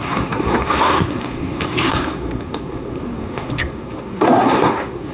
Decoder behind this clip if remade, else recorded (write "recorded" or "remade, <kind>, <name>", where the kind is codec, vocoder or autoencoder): remade, codec, SNAC